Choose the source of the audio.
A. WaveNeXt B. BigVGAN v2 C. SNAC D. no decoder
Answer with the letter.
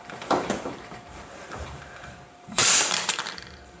B